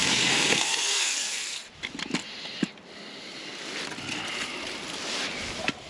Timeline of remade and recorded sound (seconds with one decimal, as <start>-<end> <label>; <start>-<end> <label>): 0.0-1.6 remade; 1.6-5.9 recorded